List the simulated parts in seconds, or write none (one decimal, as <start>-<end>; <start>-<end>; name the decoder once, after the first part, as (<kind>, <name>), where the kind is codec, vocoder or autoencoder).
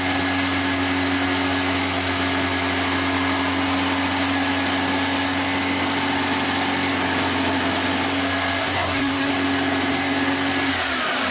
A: 8.6-9.3 (codec, SNAC)